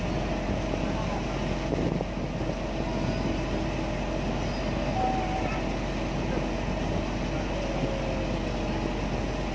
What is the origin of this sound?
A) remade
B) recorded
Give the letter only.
B